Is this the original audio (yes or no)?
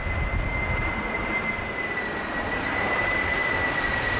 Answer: yes